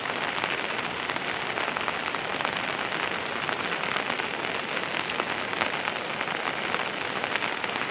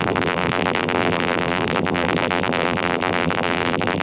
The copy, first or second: second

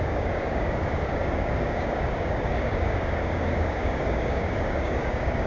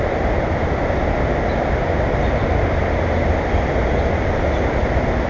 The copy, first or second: first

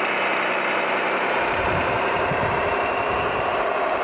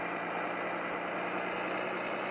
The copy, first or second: first